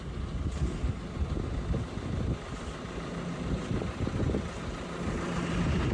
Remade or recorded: recorded